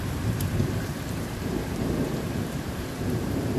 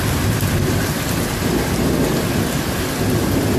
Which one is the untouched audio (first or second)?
second